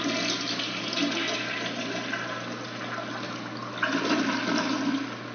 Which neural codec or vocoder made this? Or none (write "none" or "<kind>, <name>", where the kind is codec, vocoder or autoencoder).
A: none